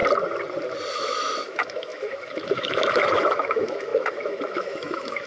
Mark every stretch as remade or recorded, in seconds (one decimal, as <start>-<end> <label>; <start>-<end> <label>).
0.0-0.9 recorded; 0.9-5.3 remade

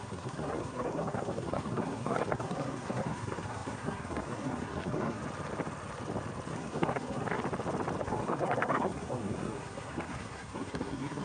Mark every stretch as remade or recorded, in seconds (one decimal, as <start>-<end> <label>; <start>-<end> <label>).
0.0-5.2 remade; 5.2-6.5 recorded; 6.5-7.4 remade; 7.4-8.0 recorded; 8.0-11.2 remade